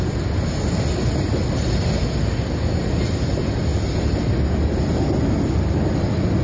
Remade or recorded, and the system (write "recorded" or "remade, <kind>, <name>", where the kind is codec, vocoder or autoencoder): recorded